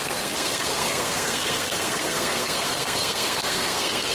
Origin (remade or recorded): remade